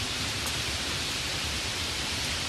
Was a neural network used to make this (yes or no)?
yes